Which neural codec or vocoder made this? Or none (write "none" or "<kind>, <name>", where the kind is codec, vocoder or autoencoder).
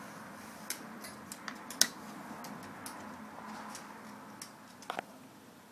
none